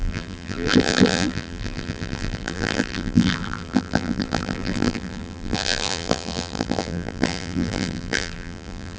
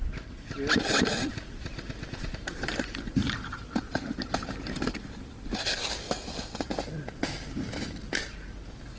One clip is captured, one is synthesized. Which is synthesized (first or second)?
first